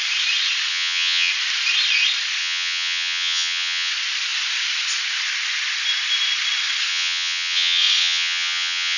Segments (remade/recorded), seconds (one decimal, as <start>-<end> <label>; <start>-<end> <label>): 0.0-0.7 recorded; 0.7-1.3 remade; 1.3-2.4 recorded; 2.4-3.9 remade; 3.9-6.9 recorded; 6.9-9.0 remade